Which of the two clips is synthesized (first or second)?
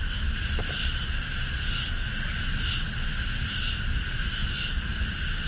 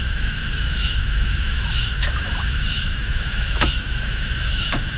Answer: second